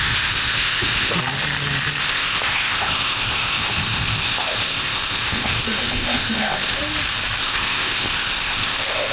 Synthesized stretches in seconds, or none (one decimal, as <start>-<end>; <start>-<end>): 0.0-1.2; 2.0-6.8; 7.4-9.1